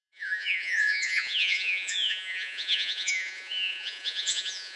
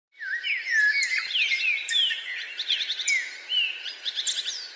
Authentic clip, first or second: second